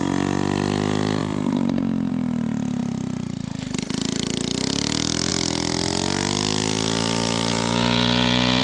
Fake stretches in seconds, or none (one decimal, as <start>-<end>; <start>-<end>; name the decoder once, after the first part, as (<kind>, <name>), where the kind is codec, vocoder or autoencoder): 7.5-8.6 (vocoder, Vocos)